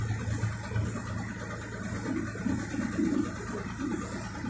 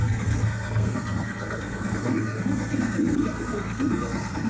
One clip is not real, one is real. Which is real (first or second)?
first